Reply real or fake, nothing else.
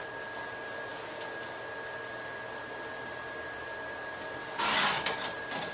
real